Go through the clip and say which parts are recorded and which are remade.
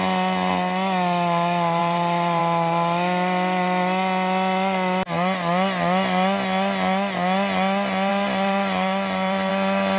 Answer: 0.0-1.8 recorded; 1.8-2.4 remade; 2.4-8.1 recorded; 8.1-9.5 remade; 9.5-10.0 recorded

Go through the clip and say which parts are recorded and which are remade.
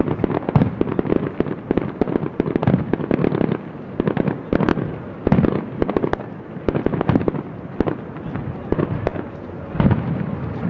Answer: 0.0-10.7 recorded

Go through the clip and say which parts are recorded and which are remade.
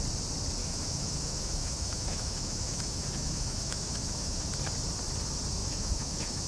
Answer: 0.0-0.6 recorded; 0.6-4.5 remade; 4.5-5.6 recorded; 5.6-6.5 remade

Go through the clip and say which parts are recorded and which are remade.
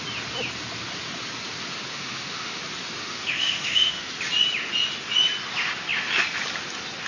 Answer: 0.0-1.9 recorded; 1.9-2.6 remade; 2.6-3.0 recorded; 3.0-4.1 remade; 4.1-7.1 recorded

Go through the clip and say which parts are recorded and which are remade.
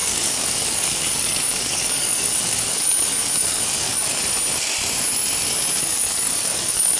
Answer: 0.0-4.2 remade; 4.2-5.8 recorded; 5.8-7.0 remade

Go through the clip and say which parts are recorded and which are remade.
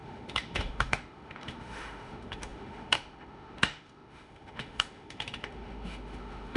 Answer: 0.0-6.6 remade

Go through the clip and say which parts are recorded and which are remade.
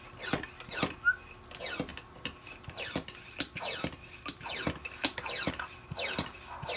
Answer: 0.0-6.8 recorded